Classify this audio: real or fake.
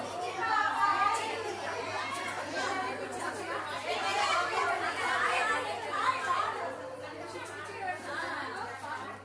real